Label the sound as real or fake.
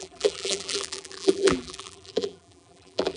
fake